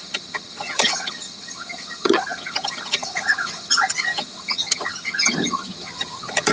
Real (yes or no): no